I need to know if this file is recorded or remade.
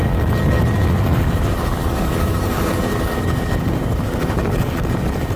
remade